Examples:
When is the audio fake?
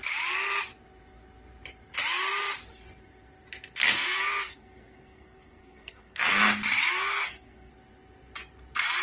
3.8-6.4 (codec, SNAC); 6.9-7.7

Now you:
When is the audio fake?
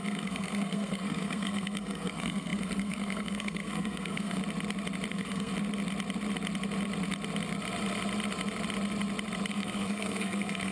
0.0-4.4 (codec, SNAC); 5.1-5.5; 9.5-10.7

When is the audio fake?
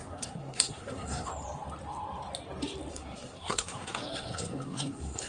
0.0-1.3 (codec, SNAC); 2.9-5.3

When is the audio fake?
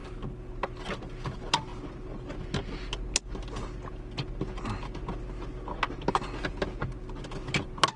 none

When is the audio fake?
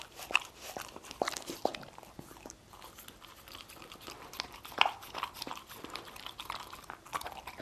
none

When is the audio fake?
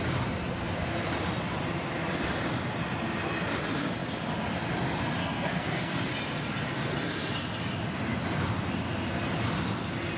5.2-6.1 (codec, SNAC)